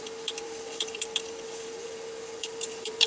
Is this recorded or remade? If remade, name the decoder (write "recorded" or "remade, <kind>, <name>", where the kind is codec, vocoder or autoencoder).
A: remade, vocoder, BigVGAN v2